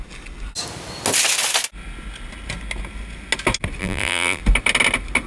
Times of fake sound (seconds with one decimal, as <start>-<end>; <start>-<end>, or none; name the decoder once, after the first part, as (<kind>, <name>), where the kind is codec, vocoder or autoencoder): 3.8-4.4 (vocoder, BigVGAN v2)